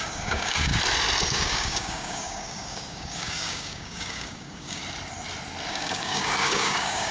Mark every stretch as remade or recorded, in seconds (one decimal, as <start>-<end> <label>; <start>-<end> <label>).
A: 0.0-0.7 remade; 0.7-1.3 recorded; 1.3-4.8 remade; 4.8-5.7 recorded; 5.7-7.1 remade